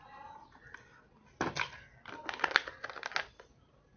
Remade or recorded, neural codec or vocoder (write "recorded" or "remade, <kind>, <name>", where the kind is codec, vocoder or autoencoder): recorded